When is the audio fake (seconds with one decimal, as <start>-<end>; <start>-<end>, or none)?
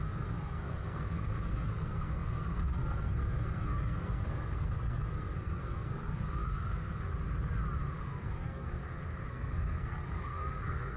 0.0-7.1; 8.0-8.8; 9.3-11.0